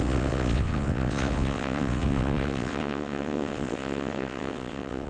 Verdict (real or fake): fake